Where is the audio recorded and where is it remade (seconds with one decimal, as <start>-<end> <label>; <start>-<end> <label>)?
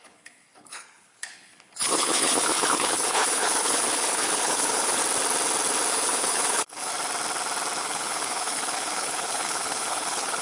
0.0-5.0 remade; 5.0-5.9 recorded; 5.9-6.9 remade; 6.9-7.8 recorded; 7.8-10.4 remade